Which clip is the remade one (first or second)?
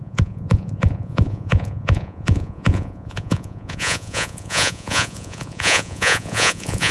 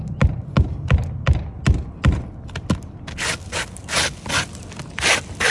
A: first